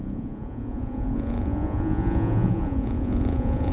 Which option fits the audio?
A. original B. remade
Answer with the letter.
B